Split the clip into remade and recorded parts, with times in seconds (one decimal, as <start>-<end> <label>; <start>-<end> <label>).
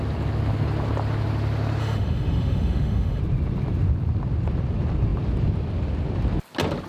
0.0-1.8 recorded; 1.8-3.2 remade; 3.2-6.9 recorded